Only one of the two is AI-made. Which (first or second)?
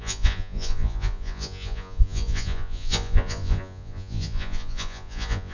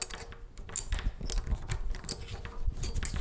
first